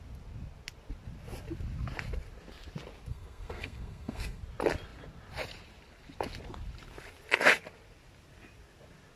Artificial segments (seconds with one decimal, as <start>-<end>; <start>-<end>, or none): 3.1-4.4